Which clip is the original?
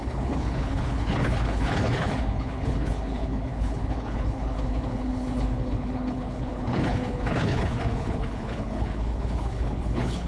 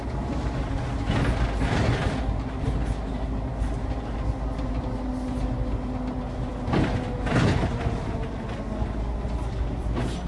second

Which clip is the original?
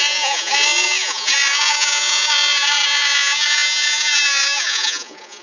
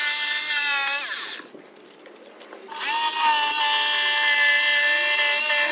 second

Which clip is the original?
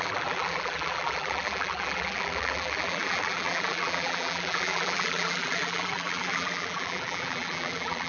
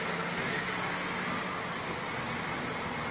second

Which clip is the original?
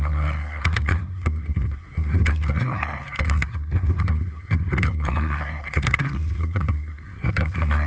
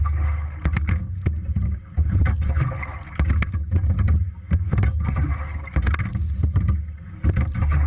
second